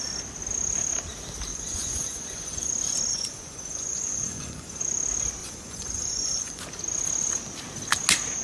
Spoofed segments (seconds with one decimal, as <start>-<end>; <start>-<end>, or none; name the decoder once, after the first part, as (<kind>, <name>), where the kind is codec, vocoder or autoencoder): 1.5-2.7 (vocoder, Vocos); 3.1-4.8; 5.4-6.6